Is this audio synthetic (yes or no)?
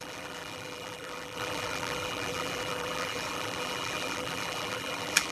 yes